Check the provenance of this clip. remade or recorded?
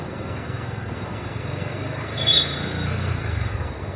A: remade